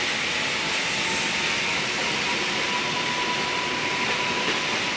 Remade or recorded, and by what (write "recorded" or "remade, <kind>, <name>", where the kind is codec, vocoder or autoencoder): recorded